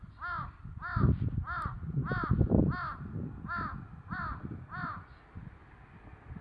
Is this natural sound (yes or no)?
yes